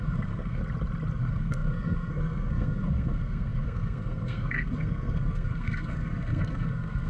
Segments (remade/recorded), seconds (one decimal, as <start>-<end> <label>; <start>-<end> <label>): 0.0-0.6 remade; 0.6-1.2 recorded; 1.2-7.1 remade